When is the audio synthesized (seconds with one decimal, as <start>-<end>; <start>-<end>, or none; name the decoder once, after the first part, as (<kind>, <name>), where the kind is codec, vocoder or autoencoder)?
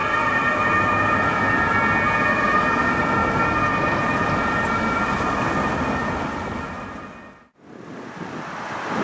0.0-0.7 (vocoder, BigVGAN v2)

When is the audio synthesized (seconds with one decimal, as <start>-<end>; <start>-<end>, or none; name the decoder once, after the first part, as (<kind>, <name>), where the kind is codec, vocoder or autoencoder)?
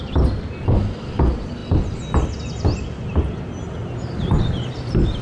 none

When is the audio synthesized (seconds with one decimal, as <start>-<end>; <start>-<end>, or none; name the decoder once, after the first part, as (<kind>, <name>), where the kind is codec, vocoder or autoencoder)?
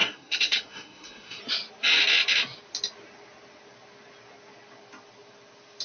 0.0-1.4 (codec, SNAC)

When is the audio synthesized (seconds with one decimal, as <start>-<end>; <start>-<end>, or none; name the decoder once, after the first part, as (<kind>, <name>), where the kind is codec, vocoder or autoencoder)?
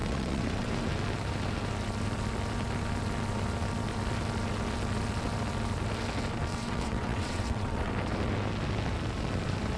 0.0-0.7 (vocoder, WaveNeXt); 6.5-7.9